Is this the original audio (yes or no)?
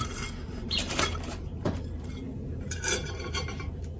no